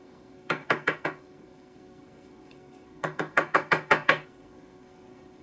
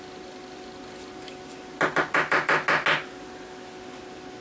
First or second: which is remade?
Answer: first